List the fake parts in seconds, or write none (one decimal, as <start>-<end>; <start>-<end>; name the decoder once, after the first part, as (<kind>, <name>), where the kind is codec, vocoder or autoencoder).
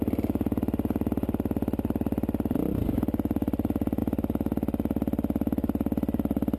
none